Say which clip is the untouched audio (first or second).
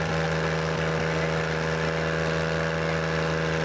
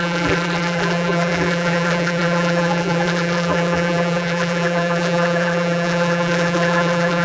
first